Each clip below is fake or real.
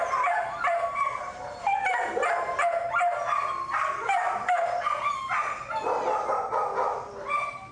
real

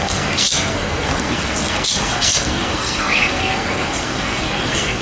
fake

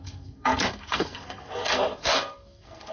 fake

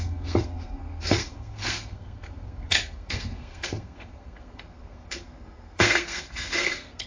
fake